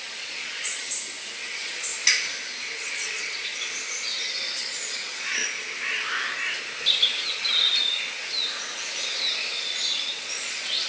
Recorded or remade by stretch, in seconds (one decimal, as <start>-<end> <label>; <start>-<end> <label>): 0.0-0.9 remade; 0.9-1.5 recorded; 1.5-1.9 remade; 1.9-2.9 recorded; 2.9-3.5 remade; 3.5-4.6 recorded; 4.6-5.4 remade; 5.4-10.2 recorded; 10.2-10.9 remade